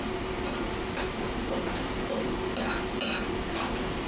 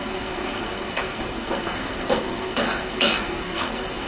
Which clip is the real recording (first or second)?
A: first